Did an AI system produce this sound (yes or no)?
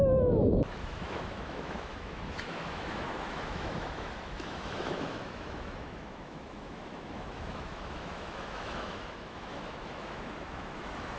yes